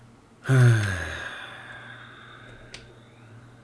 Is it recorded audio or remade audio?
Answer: recorded